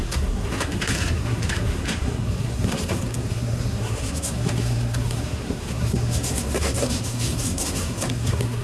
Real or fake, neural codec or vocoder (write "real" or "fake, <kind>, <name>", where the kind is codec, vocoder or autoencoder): fake, codec, SNAC